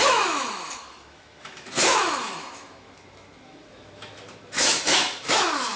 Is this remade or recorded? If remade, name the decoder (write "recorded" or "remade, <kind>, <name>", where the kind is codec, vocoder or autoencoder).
remade, autoencoder, DAC-VAE